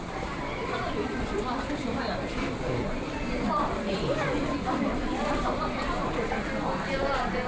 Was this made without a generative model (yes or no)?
no